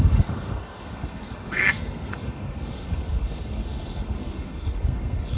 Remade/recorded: remade